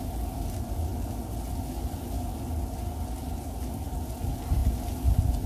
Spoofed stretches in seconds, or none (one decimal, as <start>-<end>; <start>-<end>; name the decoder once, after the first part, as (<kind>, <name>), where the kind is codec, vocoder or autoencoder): none